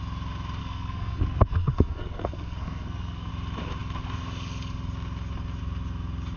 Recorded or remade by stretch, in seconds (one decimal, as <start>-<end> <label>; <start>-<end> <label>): 0.0-0.6 recorded; 0.6-3.3 remade; 3.3-6.4 recorded